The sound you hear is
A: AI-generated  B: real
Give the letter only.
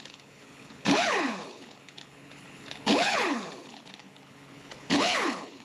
A